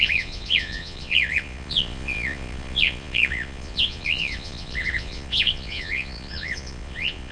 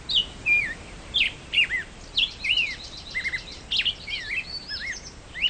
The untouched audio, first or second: second